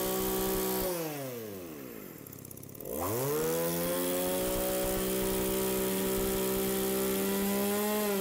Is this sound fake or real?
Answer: real